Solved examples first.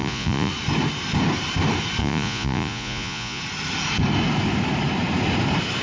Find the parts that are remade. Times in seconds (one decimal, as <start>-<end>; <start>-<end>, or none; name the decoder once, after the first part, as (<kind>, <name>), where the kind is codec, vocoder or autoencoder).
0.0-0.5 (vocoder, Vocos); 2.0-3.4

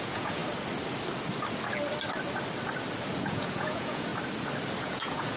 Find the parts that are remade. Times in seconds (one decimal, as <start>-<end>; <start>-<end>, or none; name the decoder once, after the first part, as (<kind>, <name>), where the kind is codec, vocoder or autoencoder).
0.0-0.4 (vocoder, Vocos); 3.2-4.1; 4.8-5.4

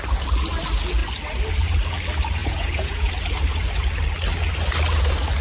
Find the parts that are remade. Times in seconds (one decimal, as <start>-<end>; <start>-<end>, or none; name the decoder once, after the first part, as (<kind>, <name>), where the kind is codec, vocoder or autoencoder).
2.4-3.1 (vocoder, Vocos)

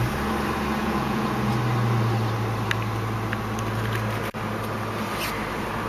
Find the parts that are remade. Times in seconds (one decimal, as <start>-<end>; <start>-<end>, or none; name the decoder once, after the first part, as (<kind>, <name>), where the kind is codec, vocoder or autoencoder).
0.8-1.5 (vocoder, Vocos)